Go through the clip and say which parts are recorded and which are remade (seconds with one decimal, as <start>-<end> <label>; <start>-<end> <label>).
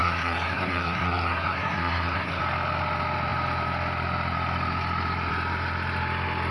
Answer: 0.0-2.4 remade; 2.4-6.5 recorded